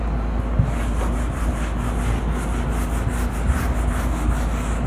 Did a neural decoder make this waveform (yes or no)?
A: no